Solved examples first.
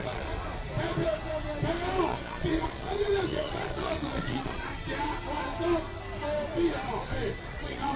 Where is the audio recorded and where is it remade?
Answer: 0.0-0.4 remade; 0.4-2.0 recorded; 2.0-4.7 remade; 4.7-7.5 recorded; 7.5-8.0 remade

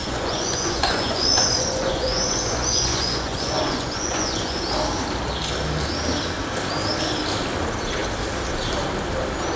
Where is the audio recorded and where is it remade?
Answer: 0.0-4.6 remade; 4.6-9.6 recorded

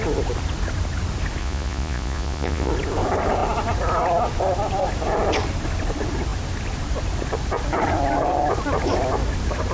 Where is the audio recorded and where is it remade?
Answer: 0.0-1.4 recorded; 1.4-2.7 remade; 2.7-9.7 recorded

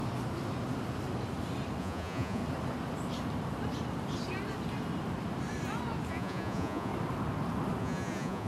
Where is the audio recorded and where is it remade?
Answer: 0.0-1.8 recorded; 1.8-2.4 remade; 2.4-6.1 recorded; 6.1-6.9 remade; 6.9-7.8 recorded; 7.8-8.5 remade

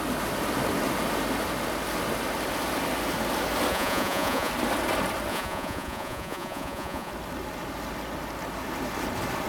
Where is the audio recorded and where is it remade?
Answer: 0.0-3.7 recorded; 3.7-4.5 remade; 4.5-5.3 recorded; 5.3-7.1 remade; 7.1-9.5 recorded

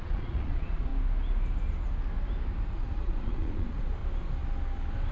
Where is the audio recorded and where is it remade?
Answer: 0.0-0.9 remade; 0.9-2.8 recorded; 2.8-4.0 remade; 4.0-5.1 recorded

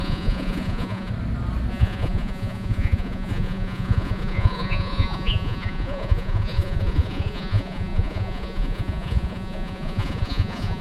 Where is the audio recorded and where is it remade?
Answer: 0.0-1.1 remade; 1.1-1.7 recorded; 1.7-10.8 remade

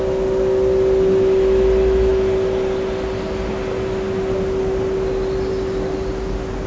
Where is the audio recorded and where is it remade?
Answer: 0.0-6.7 recorded